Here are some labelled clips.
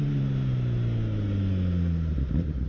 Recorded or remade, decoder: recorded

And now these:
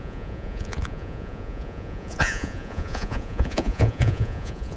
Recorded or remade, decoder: remade, vocoder, Vocos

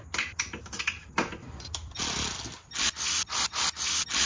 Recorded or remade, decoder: recorded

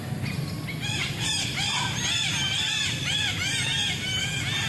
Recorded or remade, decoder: recorded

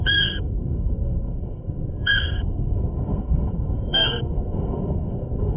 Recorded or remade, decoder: remade, codec, SNAC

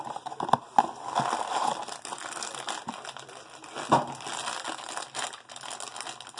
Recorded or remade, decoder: recorded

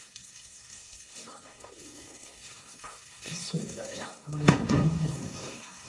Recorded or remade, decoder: remade, codec, SNAC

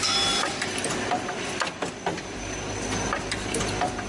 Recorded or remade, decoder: recorded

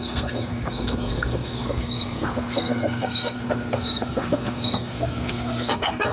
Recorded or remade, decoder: remade, codec, SNAC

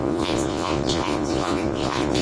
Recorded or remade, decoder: remade, vocoder, Vocos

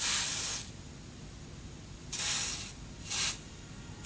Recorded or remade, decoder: recorded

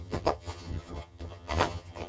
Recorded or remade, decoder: remade, vocoder, HiFi-GAN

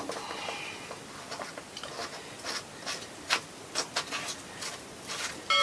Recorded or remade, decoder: recorded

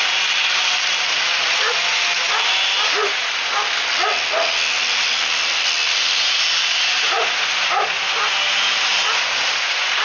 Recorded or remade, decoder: recorded